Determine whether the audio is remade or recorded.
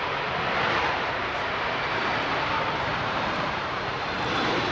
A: remade